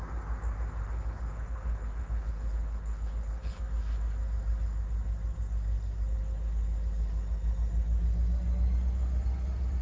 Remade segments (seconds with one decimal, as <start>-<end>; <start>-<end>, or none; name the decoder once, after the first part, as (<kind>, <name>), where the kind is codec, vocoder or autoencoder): 0.8-3.6 (codec, HILCodec)